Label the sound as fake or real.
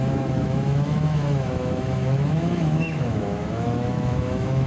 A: fake